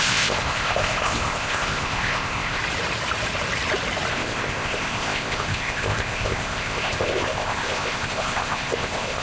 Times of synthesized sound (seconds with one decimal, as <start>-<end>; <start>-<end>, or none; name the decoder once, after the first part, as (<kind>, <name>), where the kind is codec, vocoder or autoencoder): 0.0-2.6 (codec, ZipCodec); 4.1-9.2